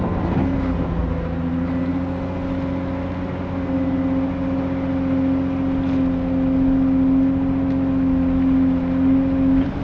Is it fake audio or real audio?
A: real